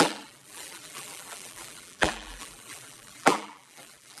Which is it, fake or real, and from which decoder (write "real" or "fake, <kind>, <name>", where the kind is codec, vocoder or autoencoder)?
fake, vocoder, BigVGAN v2